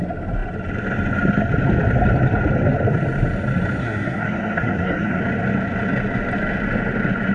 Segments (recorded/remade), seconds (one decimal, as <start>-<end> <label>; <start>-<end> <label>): 0.0-3.8 recorded; 3.8-5.2 remade; 5.2-7.3 recorded